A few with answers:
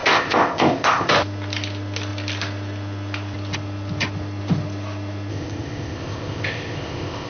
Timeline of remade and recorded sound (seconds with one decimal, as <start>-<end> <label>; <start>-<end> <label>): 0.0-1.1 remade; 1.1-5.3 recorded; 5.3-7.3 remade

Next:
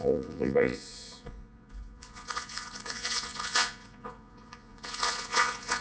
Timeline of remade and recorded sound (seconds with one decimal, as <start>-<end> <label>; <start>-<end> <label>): 0.0-5.8 remade

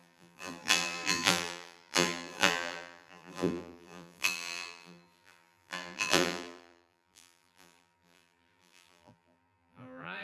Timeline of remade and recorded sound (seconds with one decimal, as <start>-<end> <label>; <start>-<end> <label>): 0.0-10.2 remade

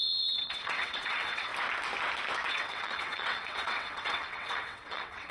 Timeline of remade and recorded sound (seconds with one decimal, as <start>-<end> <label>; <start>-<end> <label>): 0.0-1.5 remade; 1.5-2.5 recorded; 2.5-5.3 remade

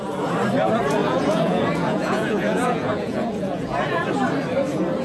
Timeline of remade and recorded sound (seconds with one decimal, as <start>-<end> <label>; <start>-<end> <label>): 0.0-1.0 recorded; 1.0-4.0 remade; 4.0-5.0 recorded

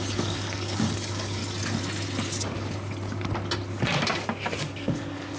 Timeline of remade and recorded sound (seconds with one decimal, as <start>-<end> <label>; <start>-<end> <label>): 0.0-1.4 remade; 1.4-4.6 recorded; 4.6-5.4 remade

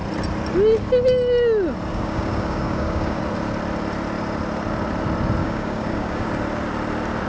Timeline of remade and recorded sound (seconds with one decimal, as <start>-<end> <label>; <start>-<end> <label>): 0.0-1.9 recorded; 1.9-3.2 remade; 3.2-5.4 recorded; 5.4-6.3 remade; 6.3-7.3 recorded

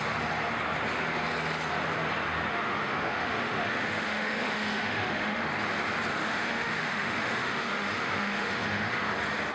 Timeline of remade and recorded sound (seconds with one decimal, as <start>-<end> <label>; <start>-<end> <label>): 0.0-2.5 recorded; 2.5-5.5 remade; 5.5-6.1 recorded; 6.1-9.1 remade; 9.1-9.5 recorded